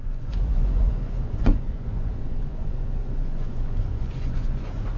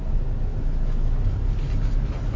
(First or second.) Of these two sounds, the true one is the second